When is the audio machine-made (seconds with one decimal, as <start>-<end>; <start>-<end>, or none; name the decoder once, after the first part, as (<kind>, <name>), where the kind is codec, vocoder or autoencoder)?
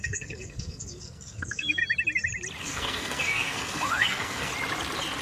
0.0-1.8 (codec, SNAC); 2.6-4.5